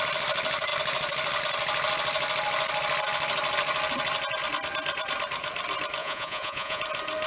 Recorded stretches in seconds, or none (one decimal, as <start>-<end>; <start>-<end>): 0.0-6.0; 6.8-7.3